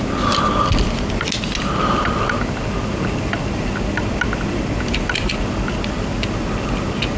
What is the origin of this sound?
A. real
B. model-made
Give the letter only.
A